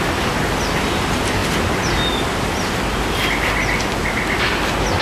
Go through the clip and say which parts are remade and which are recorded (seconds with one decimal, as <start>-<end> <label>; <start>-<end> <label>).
0.0-5.0 recorded

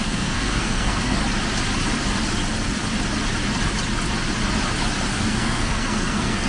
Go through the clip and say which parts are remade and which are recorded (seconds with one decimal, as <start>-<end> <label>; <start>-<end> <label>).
0.0-1.2 remade; 1.2-5.1 recorded; 5.1-6.5 remade

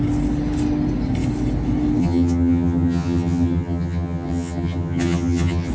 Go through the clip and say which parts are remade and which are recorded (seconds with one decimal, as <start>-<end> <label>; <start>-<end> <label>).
0.0-2.0 recorded; 2.0-5.7 remade

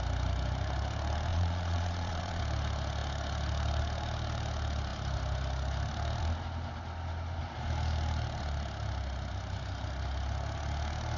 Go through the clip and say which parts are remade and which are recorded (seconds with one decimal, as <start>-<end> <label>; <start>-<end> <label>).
0.0-1.3 recorded; 1.3-2.4 remade; 2.4-11.2 recorded

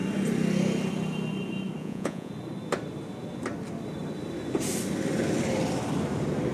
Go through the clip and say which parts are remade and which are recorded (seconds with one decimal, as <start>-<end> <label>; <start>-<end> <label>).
0.0-1.8 recorded; 1.8-2.3 remade; 2.3-6.5 recorded

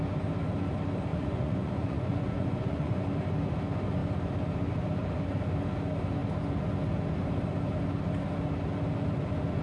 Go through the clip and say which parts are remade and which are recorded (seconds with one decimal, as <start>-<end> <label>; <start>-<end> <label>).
0.0-1.1 recorded; 1.1-3.0 remade; 3.0-9.6 recorded